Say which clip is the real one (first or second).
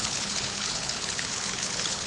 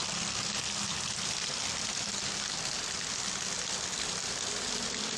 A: second